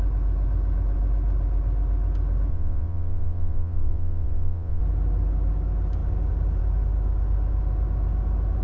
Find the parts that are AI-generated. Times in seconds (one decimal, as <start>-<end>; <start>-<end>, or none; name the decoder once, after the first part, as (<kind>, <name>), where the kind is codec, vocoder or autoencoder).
2.5-4.8 (vocoder, WaveNeXt)